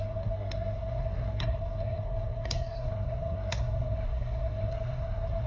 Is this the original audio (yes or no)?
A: no